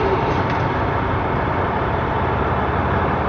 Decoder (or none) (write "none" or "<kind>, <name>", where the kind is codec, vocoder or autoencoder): vocoder, BigVGAN v2